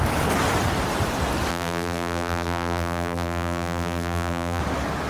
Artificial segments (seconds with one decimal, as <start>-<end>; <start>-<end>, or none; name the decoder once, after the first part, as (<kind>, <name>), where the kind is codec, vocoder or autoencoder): 1.5-4.6 (vocoder, BigVGAN v2)